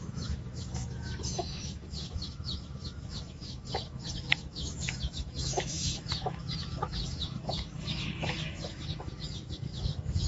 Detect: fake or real fake